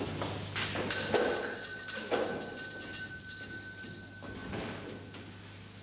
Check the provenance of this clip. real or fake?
real